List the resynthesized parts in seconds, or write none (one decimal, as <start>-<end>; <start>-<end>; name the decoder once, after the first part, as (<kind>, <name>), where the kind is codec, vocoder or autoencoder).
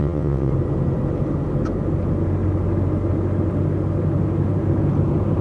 0.0-0.5 (vocoder, WaveNeXt)